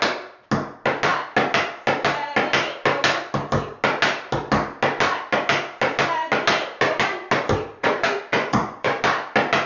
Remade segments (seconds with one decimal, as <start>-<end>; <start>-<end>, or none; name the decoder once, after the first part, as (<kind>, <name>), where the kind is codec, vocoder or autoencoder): 7.7-9.0 (vocoder, Vocos)